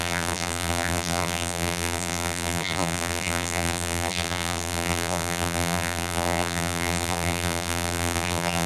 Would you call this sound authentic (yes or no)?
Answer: no